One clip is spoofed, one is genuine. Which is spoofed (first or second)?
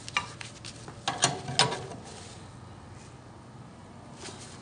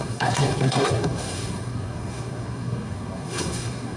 second